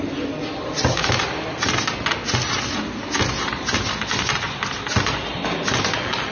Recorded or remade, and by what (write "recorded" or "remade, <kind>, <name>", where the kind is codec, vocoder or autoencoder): recorded